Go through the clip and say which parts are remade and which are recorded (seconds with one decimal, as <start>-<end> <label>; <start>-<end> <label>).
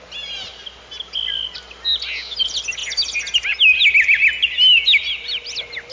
0.0-5.9 recorded